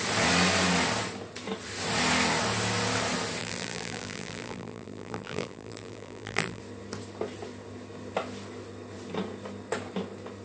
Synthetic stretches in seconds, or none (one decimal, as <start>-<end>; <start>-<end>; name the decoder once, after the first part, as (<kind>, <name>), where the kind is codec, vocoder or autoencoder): 3.4-6.6 (vocoder, BigVGAN v2)